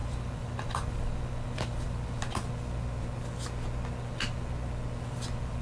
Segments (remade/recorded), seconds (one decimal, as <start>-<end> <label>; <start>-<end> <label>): 0.0-2.2 remade; 2.2-5.6 recorded

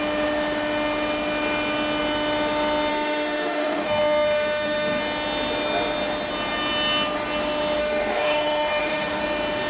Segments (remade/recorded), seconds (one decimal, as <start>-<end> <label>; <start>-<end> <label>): 0.0-2.9 recorded; 2.9-5.0 remade; 5.0-7.8 recorded; 7.8-9.2 remade; 9.2-9.7 recorded

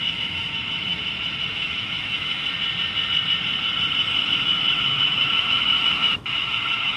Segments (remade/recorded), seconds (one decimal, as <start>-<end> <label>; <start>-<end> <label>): 0.0-0.9 remade; 0.9-1.5 recorded; 1.5-2.4 remade; 2.4-4.2 recorded; 4.2-7.0 remade

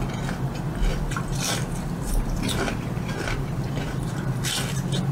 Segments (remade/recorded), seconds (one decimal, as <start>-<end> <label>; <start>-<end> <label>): 0.0-0.9 recorded; 0.9-4.0 remade; 4.0-5.1 recorded